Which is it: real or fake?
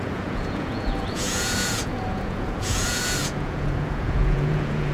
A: fake